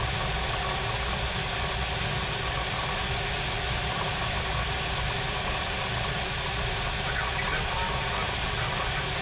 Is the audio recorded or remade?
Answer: recorded